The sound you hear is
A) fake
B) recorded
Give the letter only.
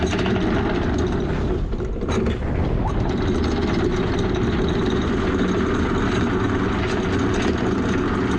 B